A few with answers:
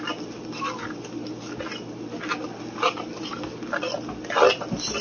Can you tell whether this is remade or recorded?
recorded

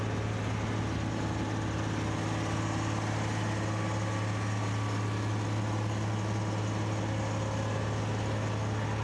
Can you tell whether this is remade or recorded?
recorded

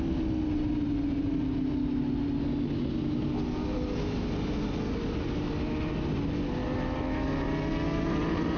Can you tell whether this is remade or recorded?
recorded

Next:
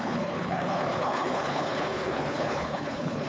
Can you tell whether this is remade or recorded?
remade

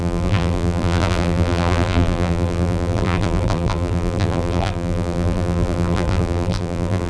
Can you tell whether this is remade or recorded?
remade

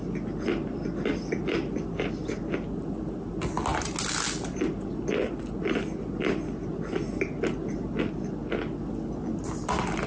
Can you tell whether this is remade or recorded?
recorded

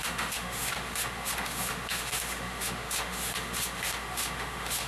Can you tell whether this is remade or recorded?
remade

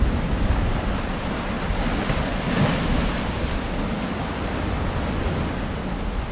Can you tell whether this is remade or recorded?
recorded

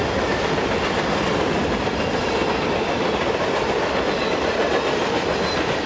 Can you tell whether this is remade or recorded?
recorded